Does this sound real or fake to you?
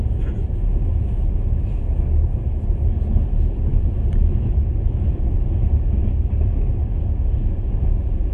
real